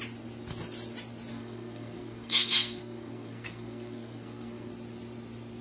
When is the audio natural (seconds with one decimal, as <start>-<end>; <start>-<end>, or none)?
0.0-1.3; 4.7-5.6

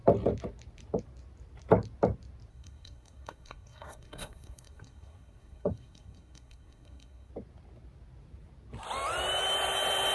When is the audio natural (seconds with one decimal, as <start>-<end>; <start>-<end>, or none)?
0.0-2.5; 7.3-10.1

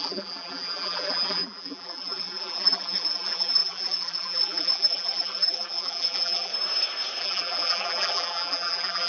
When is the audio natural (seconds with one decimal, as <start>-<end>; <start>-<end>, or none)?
6.5-7.2